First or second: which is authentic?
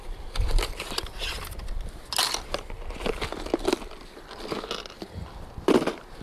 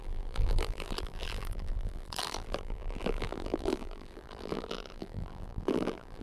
first